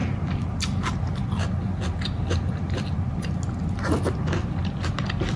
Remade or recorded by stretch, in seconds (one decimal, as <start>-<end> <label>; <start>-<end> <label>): 0.0-5.4 recorded